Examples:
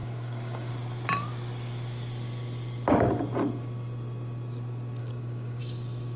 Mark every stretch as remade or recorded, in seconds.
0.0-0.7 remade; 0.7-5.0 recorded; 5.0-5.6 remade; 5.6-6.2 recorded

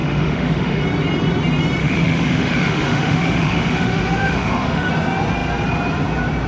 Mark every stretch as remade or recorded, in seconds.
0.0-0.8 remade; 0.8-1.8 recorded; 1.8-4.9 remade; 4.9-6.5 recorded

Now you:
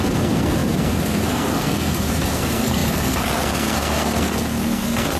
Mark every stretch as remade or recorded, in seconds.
0.0-5.2 remade

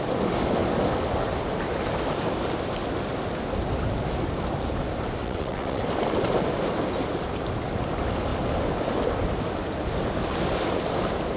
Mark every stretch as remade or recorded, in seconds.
0.0-5.2 recorded; 5.2-5.8 remade; 5.8-11.4 recorded

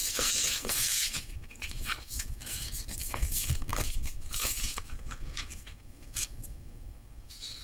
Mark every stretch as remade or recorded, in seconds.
0.0-7.6 remade

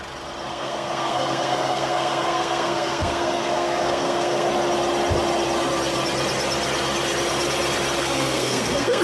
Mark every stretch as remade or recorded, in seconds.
0.0-0.5 recorded; 0.5-4.5 remade; 4.5-8.0 recorded; 8.0-9.0 remade

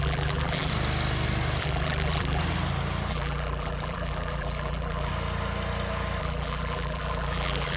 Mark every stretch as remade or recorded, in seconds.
0.0-0.7 remade; 0.7-1.6 recorded; 1.6-2.4 remade; 2.4-3.1 recorded; 3.1-5.1 remade; 5.1-6.2 recorded; 6.2-7.8 remade

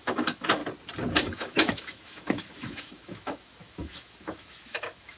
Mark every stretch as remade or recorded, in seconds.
0.0-0.6 remade; 0.6-1.3 recorded; 1.3-5.2 remade